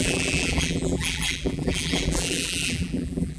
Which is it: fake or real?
fake